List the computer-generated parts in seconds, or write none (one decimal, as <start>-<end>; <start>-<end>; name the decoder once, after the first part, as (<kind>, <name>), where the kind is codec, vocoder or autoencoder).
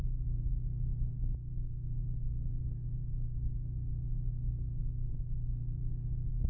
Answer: 0.0-6.5 (autoencoder, DAC-VAE)